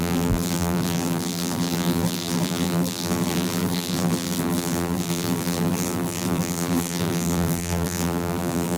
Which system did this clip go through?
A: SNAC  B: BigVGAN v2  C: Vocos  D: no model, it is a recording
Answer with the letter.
B